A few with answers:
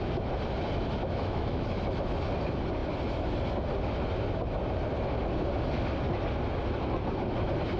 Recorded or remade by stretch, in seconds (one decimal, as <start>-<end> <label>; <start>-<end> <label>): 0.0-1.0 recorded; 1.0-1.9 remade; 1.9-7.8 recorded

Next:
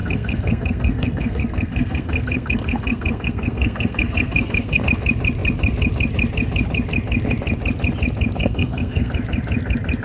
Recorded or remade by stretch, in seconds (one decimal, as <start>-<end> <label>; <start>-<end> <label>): 0.0-4.8 remade; 4.8-8.4 recorded; 8.4-9.1 remade; 9.1-10.0 recorded

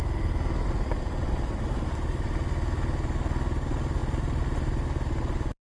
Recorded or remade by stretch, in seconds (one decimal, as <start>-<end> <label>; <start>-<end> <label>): 0.0-5.6 recorded

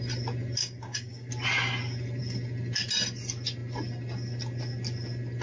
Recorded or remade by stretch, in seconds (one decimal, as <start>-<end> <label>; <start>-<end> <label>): 0.0-0.6 recorded; 0.6-1.3 remade; 1.3-5.4 recorded

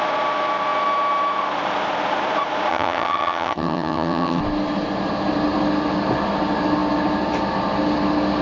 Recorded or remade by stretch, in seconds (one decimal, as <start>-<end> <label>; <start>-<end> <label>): 0.0-2.7 recorded; 2.7-4.4 remade; 4.4-8.4 recorded

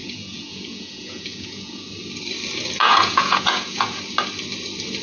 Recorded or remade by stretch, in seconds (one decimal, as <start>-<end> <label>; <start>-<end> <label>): 0.0-1.9 remade; 1.9-2.8 recorded; 2.8-4.0 remade; 4.0-5.0 recorded